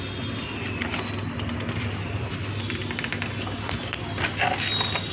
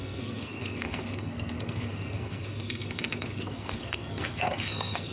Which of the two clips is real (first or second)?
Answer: first